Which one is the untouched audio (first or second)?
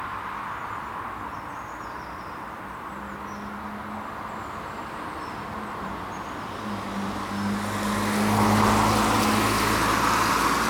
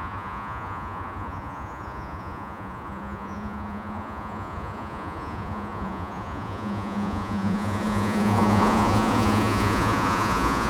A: first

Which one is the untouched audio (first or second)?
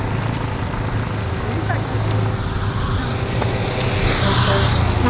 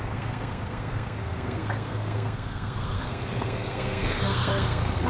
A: first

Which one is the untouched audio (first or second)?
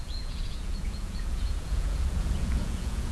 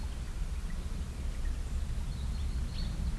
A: second